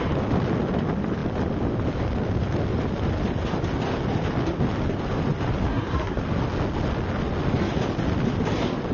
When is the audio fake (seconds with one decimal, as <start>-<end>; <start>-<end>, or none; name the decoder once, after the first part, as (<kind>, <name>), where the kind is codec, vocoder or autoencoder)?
5.7-6.2 (codec, SNAC)